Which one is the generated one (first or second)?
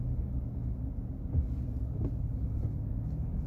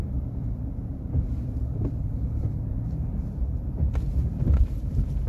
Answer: second